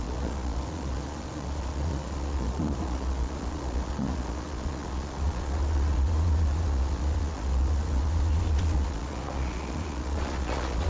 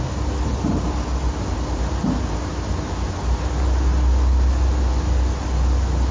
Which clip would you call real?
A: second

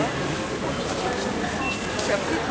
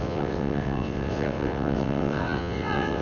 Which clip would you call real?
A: first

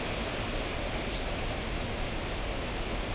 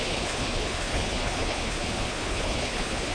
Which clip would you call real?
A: first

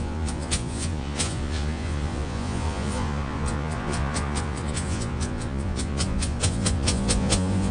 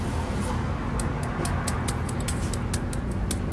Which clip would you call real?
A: second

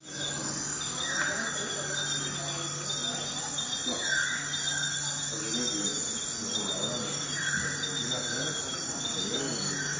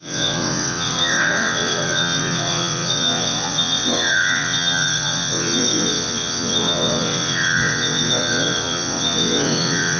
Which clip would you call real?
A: first